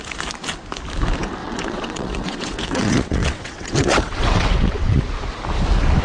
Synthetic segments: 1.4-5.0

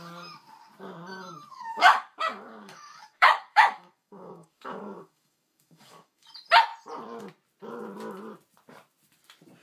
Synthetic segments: 1.5-6.3

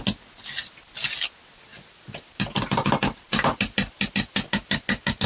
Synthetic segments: 1.7-4.1

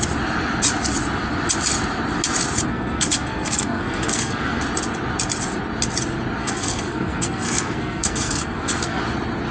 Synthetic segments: 2.7-4.6; 6.4-9.0

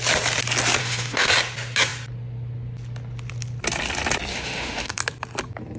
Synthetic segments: 0.8-1.3; 4.3-5.0